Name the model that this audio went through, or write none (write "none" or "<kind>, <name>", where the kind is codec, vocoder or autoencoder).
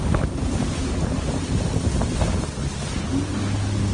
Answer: none